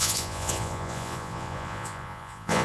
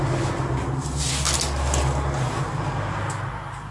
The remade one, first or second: first